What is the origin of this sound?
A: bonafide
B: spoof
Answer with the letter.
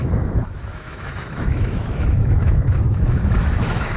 B